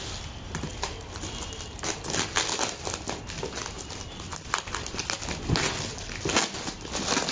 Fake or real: real